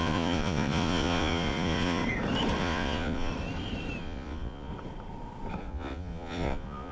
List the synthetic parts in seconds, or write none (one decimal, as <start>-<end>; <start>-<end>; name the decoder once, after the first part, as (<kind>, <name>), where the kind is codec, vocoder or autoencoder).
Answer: 0.0-2.0 (vocoder, Vocos); 2.6-3.3; 4.0-4.7; 5.6-6.9